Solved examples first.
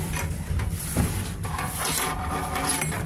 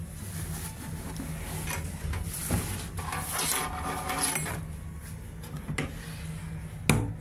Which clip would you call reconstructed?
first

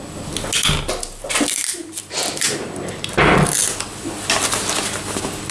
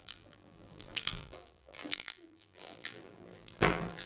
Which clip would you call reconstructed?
second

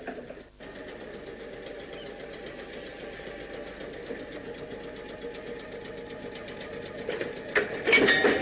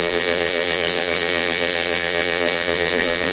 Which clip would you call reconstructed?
second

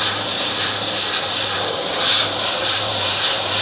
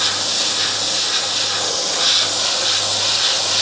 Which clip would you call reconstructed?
first